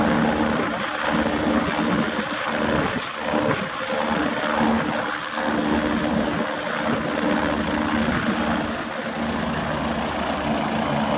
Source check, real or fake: real